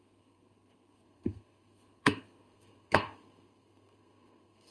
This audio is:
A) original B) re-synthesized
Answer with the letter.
B